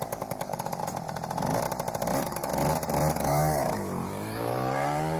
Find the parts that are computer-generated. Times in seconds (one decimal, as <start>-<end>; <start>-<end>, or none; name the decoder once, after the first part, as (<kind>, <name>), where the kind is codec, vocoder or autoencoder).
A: 0.0-0.8 (codec, DAC); 2.1-2.5; 3.1-5.2